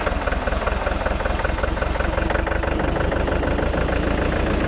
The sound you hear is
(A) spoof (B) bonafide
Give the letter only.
B